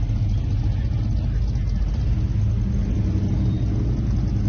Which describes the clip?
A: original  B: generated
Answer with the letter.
A